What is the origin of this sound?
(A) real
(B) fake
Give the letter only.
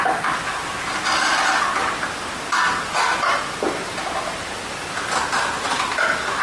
A